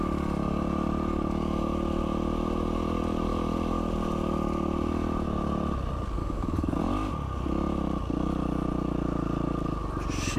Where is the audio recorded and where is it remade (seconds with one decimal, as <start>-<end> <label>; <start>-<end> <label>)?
0.0-6.2 recorded; 6.2-6.8 remade; 6.8-10.4 recorded

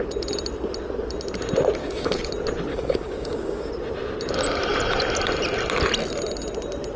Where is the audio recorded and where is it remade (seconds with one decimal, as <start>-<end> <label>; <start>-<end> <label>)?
0.0-1.8 recorded; 1.8-2.3 remade; 2.3-2.7 recorded; 2.7-3.7 remade; 3.7-7.0 recorded

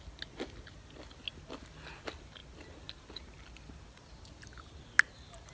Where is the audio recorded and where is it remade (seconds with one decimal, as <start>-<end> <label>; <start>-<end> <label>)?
0.0-5.5 recorded

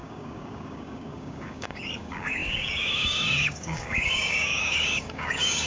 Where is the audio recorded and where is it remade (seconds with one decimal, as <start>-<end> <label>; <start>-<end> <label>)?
0.0-5.7 remade

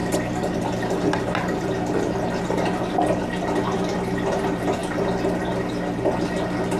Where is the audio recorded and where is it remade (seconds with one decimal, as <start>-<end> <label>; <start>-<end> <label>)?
0.0-6.8 recorded

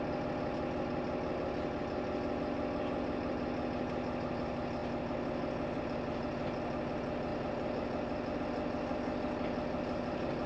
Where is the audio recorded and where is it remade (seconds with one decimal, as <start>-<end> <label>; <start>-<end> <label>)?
0.0-10.5 recorded

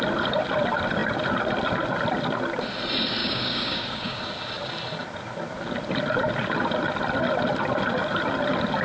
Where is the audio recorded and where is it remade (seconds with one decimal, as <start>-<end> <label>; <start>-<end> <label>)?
0.0-3.2 recorded; 3.2-4.2 remade; 4.2-8.8 recorded

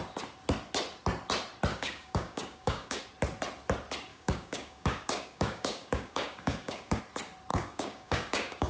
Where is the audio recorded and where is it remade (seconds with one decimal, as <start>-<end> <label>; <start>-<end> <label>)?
0.0-1.7 recorded; 1.7-3.0 remade; 3.0-4.1 recorded; 4.1-7.0 remade; 7.0-7.5 recorded; 7.5-8.7 remade